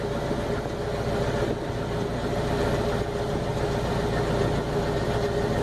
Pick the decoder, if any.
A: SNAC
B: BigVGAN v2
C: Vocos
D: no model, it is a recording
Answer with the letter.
D